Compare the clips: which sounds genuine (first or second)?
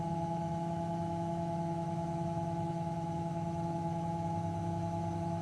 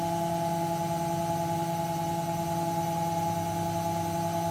second